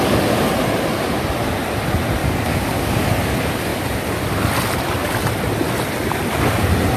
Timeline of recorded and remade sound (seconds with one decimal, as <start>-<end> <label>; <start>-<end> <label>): 0.0-2.2 recorded; 2.2-3.1 remade; 3.1-7.0 recorded